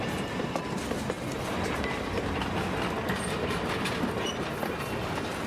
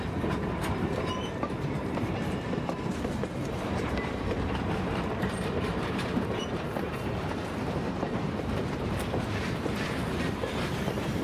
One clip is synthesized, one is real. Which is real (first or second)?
first